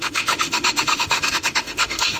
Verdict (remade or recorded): remade